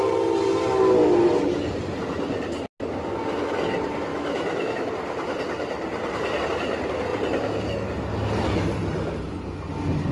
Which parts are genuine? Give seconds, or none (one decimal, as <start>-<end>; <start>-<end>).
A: 0.0-4.1; 4.9-10.1